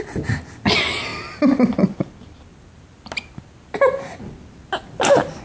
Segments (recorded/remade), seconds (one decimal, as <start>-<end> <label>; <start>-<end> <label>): 0.0-5.4 recorded